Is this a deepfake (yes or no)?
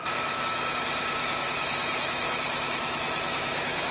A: yes